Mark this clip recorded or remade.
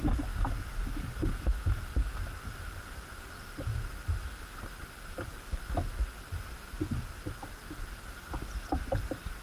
recorded